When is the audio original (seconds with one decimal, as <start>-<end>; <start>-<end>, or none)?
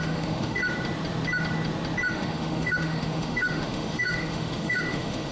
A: 0.6-2.1